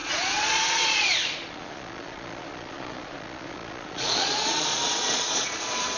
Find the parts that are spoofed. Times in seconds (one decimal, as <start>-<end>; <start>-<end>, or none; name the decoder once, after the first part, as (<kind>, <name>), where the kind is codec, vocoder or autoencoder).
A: 0.0-6.0 (vocoder, Vocos)